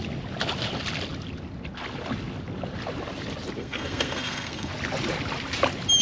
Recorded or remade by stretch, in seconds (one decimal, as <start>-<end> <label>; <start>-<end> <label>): 0.0-3.6 recorded; 3.6-4.7 remade; 4.7-6.0 recorded